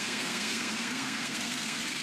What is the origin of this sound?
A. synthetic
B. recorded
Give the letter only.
A